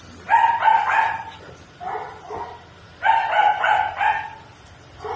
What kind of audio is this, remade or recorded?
recorded